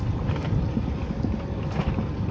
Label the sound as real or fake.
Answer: real